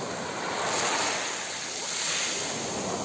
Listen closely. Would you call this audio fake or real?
real